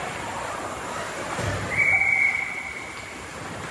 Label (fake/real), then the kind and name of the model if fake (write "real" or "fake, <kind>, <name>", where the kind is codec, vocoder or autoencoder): real